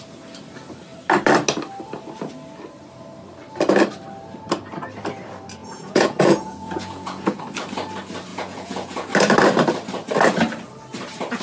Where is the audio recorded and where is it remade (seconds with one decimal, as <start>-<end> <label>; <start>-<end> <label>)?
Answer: 0.0-5.6 recorded; 5.6-7.4 remade; 7.4-8.3 recorded; 8.3-9.1 remade; 9.1-11.4 recorded